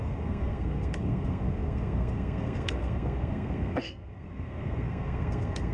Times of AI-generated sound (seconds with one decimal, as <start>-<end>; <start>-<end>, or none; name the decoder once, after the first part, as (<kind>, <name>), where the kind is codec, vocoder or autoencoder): 0.0-5.7 (codec, SNAC)